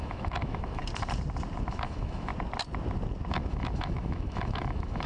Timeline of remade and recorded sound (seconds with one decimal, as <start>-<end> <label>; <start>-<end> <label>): 0.0-0.8 remade; 0.8-1.7 recorded; 1.7-2.3 remade; 2.3-3.3 recorded; 3.3-5.1 remade